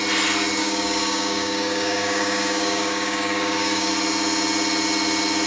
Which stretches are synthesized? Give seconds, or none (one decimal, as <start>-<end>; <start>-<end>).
0.6-3.9